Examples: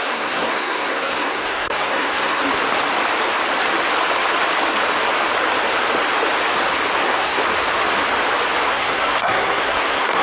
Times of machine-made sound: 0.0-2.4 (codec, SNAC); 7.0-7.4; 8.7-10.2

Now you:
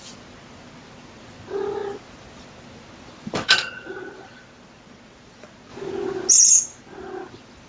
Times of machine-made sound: none

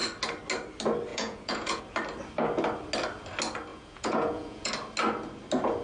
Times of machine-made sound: 1.1-1.8 (vocoder, Vocos); 3.7-4.7

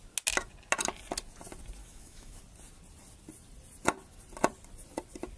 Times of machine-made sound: 1.8-2.4 (autoencoder, DAC-VAE)

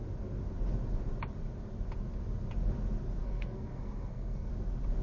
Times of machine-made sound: 3.2-4.5 (codec, SNAC)

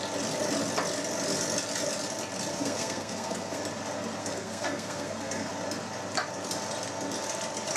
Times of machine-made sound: 2.5-3.6 (codec, SNAC); 4.2-5.5

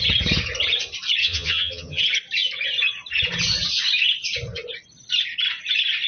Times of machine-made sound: 1.2-2.0 (vocoder, HiFi-GAN)